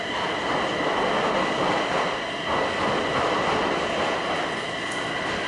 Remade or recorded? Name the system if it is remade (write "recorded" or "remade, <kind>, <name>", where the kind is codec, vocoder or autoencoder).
recorded